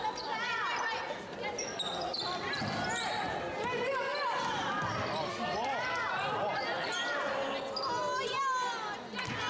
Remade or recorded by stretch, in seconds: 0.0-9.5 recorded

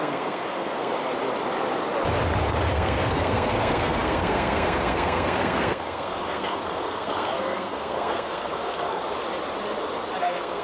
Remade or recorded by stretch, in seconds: 0.0-0.9 remade; 0.9-2.7 recorded; 2.7-9.0 remade; 9.0-10.2 recorded; 10.2-10.6 remade

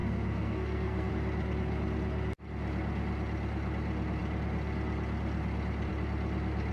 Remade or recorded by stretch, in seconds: 0.0-1.1 remade; 1.1-6.7 recorded

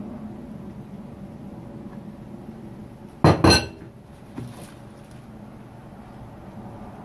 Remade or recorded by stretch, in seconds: 0.0-7.0 recorded